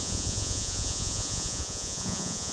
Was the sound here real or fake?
fake